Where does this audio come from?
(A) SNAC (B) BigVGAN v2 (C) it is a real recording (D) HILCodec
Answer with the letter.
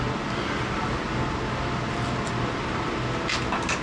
C